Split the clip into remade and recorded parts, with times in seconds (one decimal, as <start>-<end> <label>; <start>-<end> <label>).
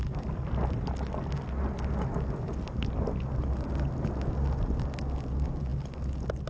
0.0-6.5 recorded